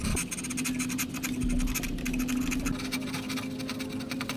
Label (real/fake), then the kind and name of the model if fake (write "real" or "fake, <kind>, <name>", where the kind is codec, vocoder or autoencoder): real